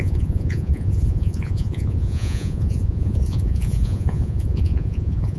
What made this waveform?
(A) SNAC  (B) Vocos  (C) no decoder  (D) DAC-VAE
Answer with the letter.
B